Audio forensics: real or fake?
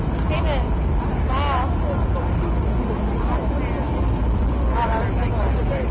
real